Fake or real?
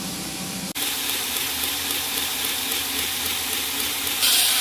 fake